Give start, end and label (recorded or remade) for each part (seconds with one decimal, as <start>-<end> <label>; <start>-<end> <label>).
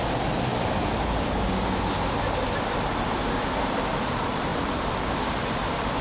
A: 0.0-0.5 remade; 0.5-3.4 recorded; 3.4-4.5 remade; 4.5-6.0 recorded